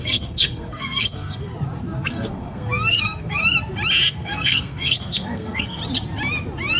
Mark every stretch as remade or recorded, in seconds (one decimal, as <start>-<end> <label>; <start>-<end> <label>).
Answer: 0.0-1.5 remade; 1.5-2.1 recorded; 2.1-3.4 remade; 3.4-4.1 recorded; 4.1-5.8 remade; 5.8-6.8 recorded